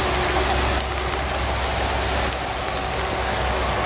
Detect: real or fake real